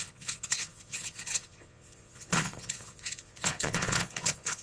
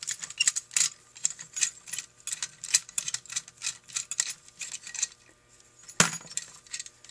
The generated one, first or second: first